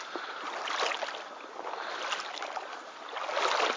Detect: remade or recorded recorded